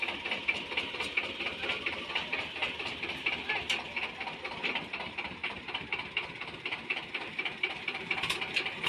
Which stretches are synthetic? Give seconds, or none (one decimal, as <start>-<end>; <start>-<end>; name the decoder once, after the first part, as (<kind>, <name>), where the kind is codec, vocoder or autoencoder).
5.4-8.1 (vocoder, BigVGAN v2)